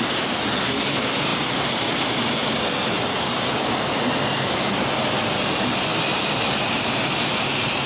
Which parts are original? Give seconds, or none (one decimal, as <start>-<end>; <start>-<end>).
0.0-7.9

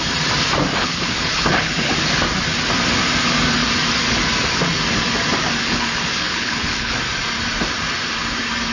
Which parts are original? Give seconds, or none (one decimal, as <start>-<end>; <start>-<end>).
0.0-0.8; 1.9-5.6; 7.0-8.7